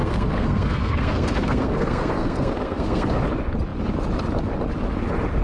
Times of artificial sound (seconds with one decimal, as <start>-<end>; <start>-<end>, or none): 0.0-3.2